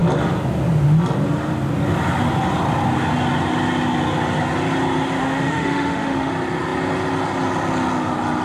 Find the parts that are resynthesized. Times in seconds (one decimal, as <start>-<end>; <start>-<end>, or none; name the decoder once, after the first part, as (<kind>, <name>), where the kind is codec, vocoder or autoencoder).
5.2-6.3 (autoencoder, DAC-VAE)